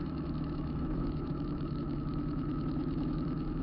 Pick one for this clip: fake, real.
fake